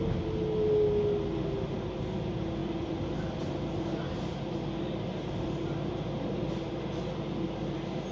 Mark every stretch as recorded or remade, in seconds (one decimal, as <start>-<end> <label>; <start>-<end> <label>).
0.0-8.1 recorded